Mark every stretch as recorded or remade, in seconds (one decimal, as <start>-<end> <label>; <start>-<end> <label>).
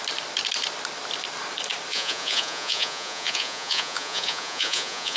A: 0.0-1.9 recorded; 1.9-5.2 remade